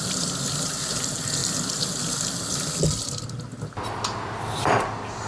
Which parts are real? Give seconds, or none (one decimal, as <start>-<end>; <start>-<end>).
0.0-5.3